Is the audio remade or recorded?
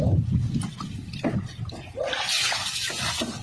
recorded